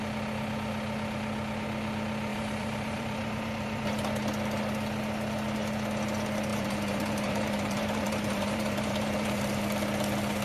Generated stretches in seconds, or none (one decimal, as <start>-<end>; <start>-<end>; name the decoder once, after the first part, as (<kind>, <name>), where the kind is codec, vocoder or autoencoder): 2.3-3.8 (vocoder, BigVGAN v2); 6.5-9.6